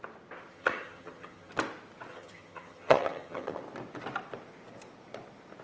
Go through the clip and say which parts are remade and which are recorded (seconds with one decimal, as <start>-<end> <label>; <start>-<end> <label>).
0.0-0.5 recorded; 0.5-1.5 remade; 1.5-2.1 recorded; 2.1-3.6 remade; 3.6-5.6 recorded